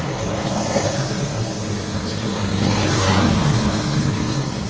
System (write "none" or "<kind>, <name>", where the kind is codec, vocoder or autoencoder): codec, SNAC